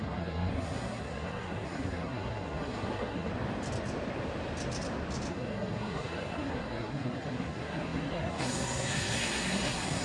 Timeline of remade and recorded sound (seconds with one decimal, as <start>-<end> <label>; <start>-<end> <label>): 0.0-3.3 remade; 3.3-5.3 recorded; 5.3-10.0 remade